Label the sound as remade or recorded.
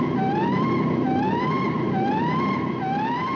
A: recorded